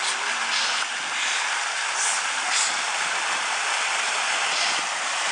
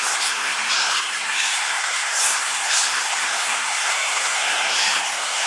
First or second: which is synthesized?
second